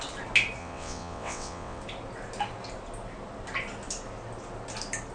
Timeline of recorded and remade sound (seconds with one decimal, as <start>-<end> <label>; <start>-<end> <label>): 0.0-0.6 recorded; 0.6-1.8 remade; 1.8-5.1 recorded